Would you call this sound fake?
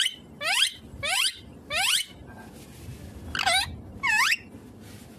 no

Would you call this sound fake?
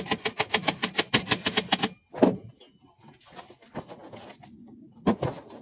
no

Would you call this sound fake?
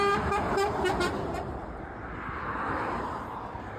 no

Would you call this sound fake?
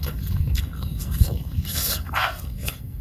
yes